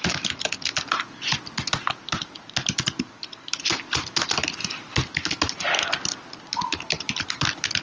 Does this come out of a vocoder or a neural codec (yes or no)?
no